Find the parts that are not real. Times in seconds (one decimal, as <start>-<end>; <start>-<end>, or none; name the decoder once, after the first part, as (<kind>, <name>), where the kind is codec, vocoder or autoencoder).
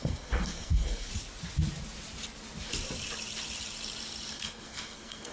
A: 0.0-1.1 (codec, SNAC); 4.3-5.3